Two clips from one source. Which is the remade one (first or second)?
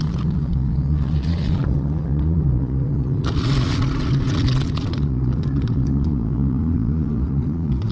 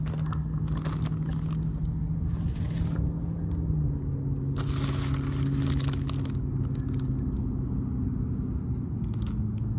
first